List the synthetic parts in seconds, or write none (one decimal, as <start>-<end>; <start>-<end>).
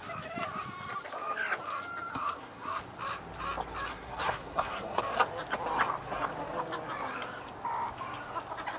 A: 2.1-2.8; 3.9-5.0